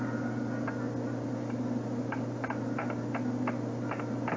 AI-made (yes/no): no